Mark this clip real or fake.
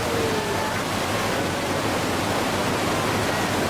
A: real